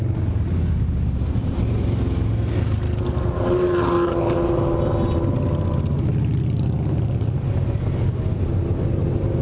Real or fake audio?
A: real